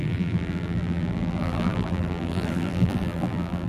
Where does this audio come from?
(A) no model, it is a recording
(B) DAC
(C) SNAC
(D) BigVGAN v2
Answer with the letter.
D